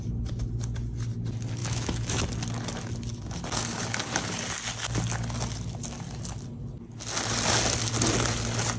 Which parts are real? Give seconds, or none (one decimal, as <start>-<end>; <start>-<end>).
0.0-1.6; 2.2-8.8